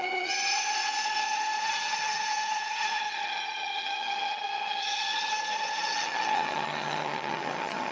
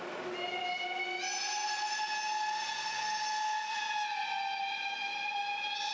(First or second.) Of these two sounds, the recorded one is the second